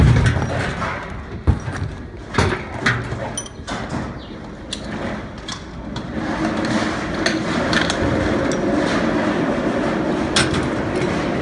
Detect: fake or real real